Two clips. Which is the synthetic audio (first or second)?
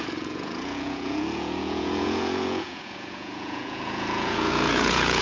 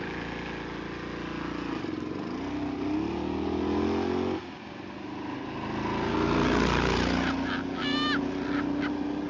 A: first